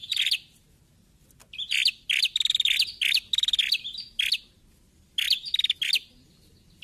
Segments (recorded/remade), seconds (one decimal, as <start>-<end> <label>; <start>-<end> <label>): 0.0-6.8 recorded